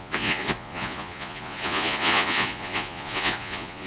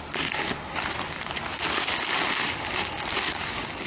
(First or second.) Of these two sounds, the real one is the second